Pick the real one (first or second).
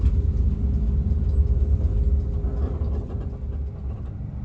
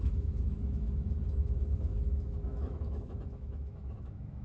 first